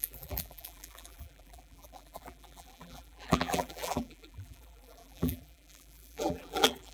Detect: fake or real fake